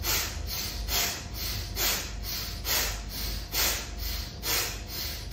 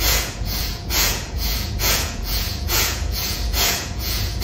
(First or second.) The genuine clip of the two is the first